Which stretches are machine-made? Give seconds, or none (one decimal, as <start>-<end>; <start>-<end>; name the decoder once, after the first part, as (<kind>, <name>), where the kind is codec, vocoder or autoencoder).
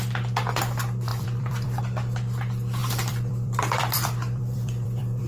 1.1-1.8 (vocoder, BigVGAN v2); 2.8-5.3